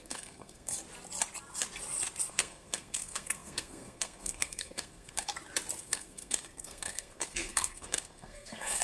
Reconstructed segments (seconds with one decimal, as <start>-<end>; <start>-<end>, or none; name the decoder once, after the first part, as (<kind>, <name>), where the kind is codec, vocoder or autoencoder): 0.0-0.7 (codec, SNAC); 2.3-5.3; 5.8-8.8